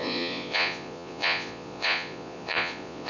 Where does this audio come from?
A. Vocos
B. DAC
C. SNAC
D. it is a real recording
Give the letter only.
A